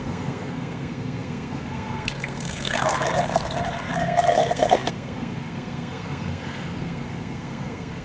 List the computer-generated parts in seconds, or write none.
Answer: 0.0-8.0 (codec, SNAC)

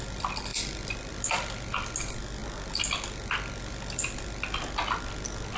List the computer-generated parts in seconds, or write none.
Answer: none

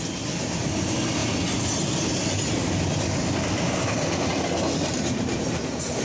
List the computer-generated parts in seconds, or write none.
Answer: none